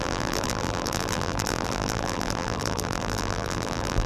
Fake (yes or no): yes